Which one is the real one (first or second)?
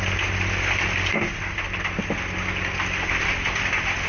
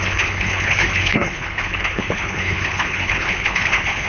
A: first